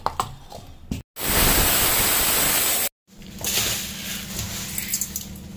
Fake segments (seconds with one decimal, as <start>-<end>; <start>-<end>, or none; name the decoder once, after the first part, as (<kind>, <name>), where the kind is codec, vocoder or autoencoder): none